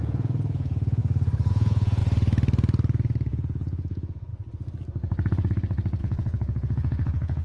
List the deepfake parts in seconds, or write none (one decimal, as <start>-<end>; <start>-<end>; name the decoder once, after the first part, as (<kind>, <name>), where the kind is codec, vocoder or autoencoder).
0.0-1.0 (vocoder, Vocos); 1.5-2.0; 3.3-4.3; 6.0-7.4